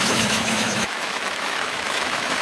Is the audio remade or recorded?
remade